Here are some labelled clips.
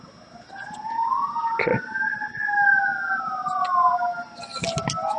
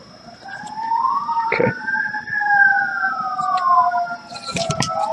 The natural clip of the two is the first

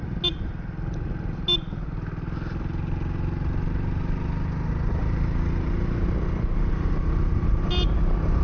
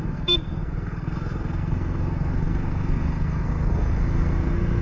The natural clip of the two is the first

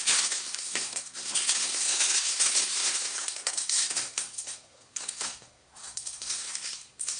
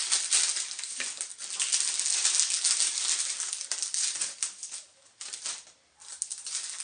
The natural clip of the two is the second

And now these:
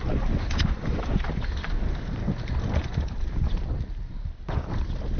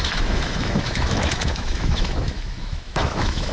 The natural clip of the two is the first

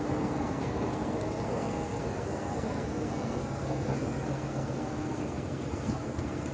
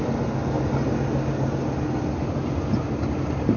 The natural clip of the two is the second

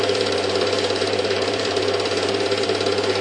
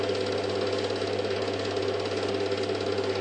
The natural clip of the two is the second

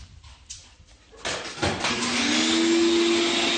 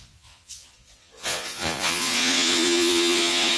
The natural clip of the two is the first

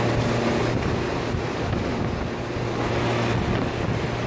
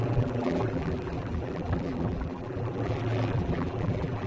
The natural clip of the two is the first